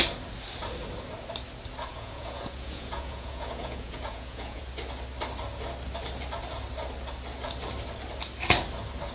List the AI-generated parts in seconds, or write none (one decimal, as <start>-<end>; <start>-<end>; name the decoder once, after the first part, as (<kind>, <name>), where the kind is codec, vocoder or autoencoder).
1.9-4.6 (vocoder, Vocos)